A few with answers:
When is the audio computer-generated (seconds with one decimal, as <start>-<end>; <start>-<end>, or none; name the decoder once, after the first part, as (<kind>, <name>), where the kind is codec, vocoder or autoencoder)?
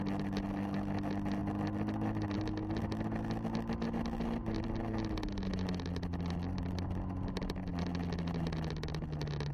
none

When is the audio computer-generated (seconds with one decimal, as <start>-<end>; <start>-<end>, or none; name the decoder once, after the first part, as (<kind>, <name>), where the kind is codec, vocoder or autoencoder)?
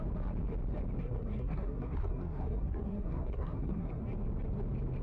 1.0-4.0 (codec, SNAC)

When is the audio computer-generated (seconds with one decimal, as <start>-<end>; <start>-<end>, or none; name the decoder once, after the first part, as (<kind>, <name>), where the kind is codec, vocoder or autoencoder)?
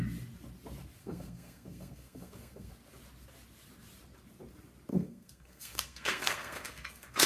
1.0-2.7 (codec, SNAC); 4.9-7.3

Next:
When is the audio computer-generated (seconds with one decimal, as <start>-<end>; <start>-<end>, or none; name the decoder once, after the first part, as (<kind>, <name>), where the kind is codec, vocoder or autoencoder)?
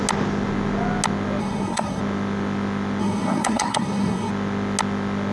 1.4-2.0 (codec, SNAC); 3.0-4.3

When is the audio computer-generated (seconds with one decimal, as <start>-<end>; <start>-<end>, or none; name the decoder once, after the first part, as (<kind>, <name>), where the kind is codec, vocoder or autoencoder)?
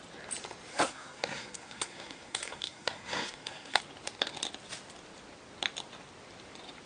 0.7-3.8 (codec, SNAC)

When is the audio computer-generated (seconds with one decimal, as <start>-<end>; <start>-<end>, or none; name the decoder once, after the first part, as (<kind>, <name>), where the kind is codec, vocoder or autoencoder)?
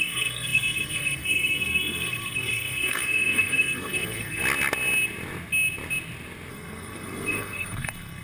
0.0-4.4 (codec, SNAC); 6.5-8.2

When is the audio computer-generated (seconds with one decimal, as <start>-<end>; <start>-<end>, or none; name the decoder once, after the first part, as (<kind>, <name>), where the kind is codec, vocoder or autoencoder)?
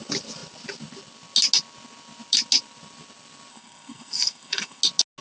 3.5-4.8 (codec, SNAC)